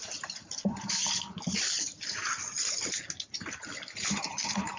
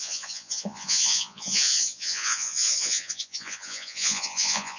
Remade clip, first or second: second